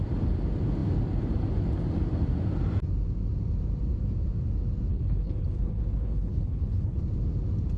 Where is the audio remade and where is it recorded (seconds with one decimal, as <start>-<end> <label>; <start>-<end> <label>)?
0.0-4.9 recorded; 4.9-7.0 remade; 7.0-7.8 recorded